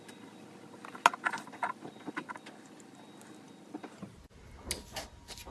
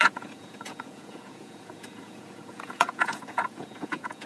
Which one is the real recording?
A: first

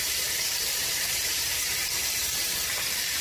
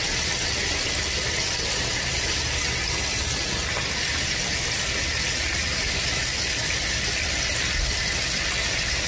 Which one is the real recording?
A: second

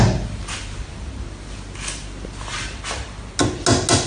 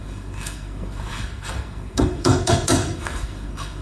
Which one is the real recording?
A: first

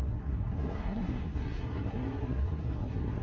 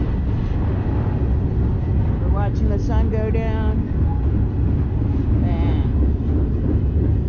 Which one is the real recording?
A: second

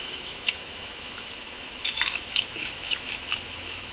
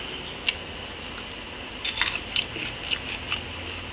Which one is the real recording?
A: second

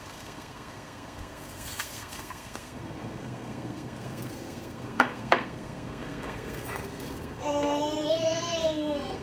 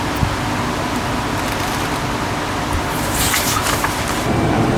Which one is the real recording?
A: second